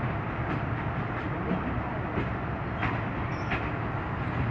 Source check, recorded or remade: recorded